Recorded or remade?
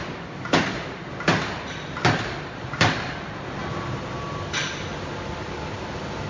recorded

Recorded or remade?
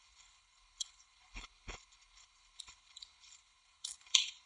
remade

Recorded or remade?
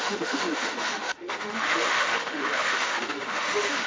remade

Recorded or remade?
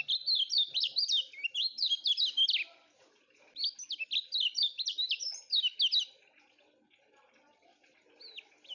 recorded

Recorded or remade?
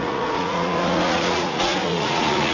remade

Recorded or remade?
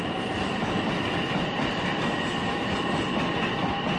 recorded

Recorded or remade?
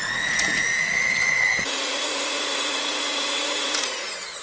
remade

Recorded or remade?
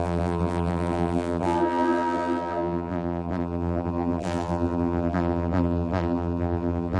remade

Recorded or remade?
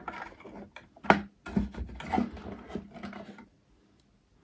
recorded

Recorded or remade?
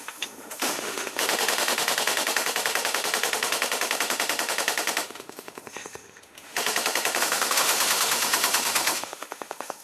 remade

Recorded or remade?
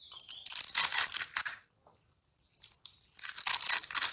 remade